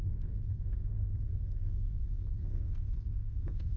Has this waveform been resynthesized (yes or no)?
yes